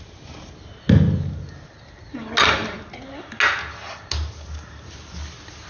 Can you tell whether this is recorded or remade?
recorded